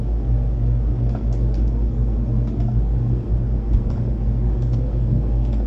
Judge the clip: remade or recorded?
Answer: remade